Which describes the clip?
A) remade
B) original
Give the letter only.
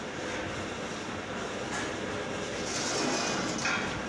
B